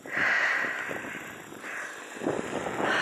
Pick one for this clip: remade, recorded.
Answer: remade